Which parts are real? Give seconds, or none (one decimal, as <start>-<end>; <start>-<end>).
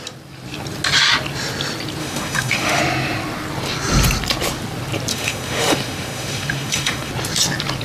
0.0-2.0; 2.8-5.1; 7.1-7.8